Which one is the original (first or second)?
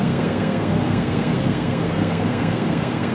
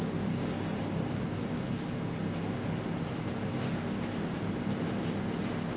second